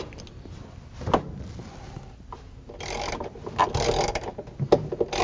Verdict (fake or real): real